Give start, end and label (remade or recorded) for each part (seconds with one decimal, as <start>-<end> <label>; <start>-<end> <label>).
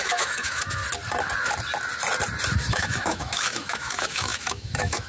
0.0-0.8 remade; 0.8-2.7 recorded; 2.7-5.1 remade